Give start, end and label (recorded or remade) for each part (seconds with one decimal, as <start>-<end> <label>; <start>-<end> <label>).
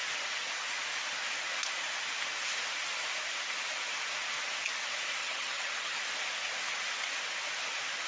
0.0-5.2 recorded; 5.2-6.0 remade; 6.0-8.1 recorded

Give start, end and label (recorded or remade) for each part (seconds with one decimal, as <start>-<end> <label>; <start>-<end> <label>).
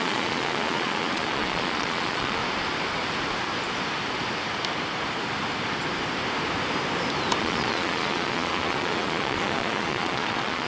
0.0-2.4 remade; 2.4-7.4 recorded; 7.4-10.7 remade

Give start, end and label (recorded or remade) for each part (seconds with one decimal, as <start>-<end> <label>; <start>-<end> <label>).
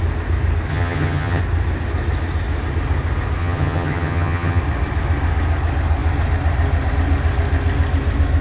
0.0-0.7 recorded; 0.7-1.4 remade; 1.4-3.4 recorded; 3.4-4.6 remade; 4.6-8.4 recorded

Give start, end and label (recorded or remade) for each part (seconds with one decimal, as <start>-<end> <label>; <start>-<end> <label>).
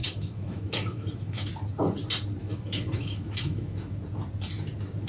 0.0-1.5 remade; 1.5-2.4 recorded; 2.4-4.0 remade; 4.0-5.1 recorded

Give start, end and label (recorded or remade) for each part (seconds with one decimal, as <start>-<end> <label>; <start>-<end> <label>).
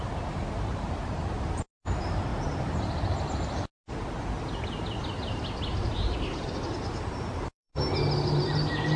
0.0-2.3 remade; 2.3-7.1 recorded; 7.1-7.7 remade; 7.7-8.3 recorded; 8.3-9.0 remade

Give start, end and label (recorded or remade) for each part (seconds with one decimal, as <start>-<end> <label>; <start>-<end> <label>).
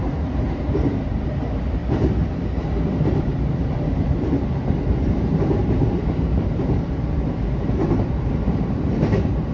0.0-1.8 remade; 1.8-2.9 recorded; 2.9-9.5 remade